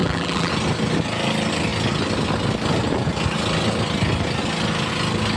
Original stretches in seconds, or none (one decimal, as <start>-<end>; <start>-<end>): 0.5-5.4